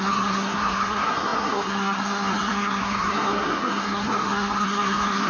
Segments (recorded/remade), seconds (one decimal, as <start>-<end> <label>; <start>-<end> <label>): 0.0-5.3 remade